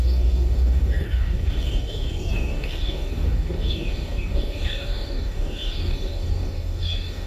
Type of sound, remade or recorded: remade